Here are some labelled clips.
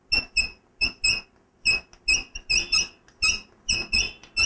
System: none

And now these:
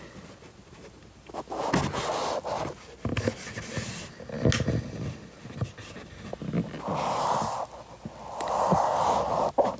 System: none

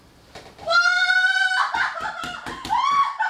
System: none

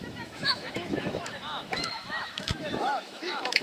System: autoencoder, DAC-VAE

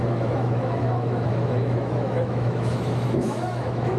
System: autoencoder, DAC-VAE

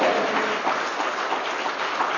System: none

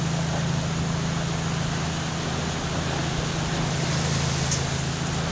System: none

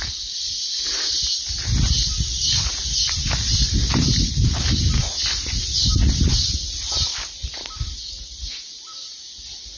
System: none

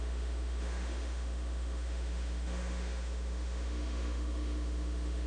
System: autoencoder, DAC-VAE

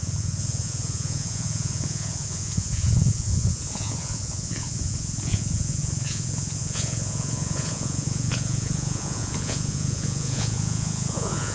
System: vocoder, Vocos